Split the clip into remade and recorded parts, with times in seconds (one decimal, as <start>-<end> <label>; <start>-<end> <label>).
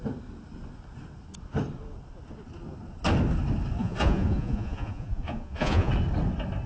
0.0-3.8 recorded; 3.8-5.9 remade; 5.9-6.7 recorded